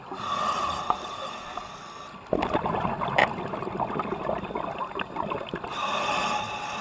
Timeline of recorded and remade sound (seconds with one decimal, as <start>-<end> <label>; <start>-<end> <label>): 0.0-6.8 recorded